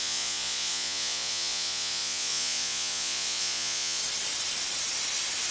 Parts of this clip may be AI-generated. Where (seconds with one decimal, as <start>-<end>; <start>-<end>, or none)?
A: 0.0-4.0